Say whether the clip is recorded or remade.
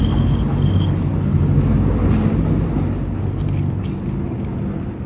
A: recorded